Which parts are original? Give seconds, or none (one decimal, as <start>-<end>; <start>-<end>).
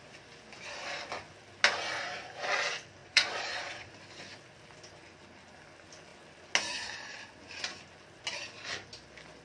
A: 0.0-3.0; 3.9-9.4